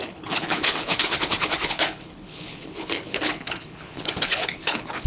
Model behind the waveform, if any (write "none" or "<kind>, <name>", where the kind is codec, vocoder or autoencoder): codec, HILCodec